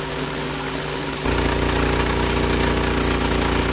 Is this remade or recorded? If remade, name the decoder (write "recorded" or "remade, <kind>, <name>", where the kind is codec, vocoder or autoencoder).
recorded